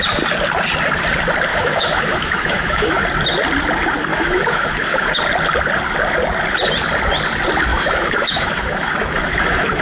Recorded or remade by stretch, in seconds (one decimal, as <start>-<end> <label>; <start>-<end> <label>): 0.0-1.5 recorded; 1.5-3.0 remade; 3.0-4.1 recorded; 4.1-5.2 remade; 5.2-7.7 recorded; 7.7-9.8 remade